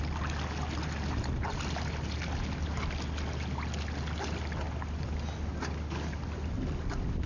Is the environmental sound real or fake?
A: real